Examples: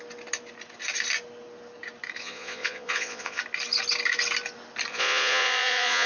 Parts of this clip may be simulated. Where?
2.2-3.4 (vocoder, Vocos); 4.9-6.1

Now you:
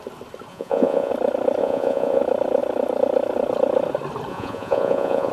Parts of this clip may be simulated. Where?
0.5-1.1 (vocoder, Vocos); 1.6-2.2; 4.3-5.3

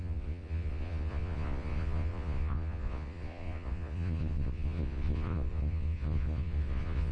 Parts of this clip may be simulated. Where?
0.0-7.1 (vocoder, Vocos)

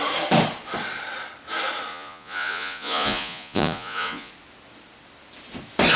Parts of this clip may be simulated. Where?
1.9-4.3 (vocoder, Vocos)

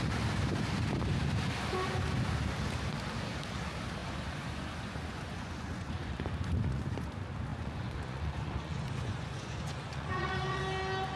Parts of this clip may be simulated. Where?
4.0-7.1 (vocoder, Vocos); 7.5-10.6

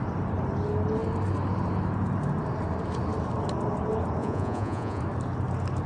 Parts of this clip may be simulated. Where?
4.2-5.0 (vocoder, Vocos)

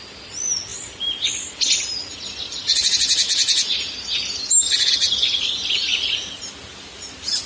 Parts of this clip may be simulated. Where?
5.9-6.5 (vocoder, Vocos)

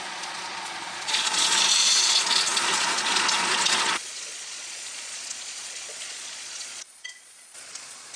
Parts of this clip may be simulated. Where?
0.0-8.2 (vocoder, Vocos)